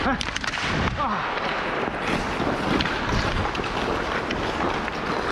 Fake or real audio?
real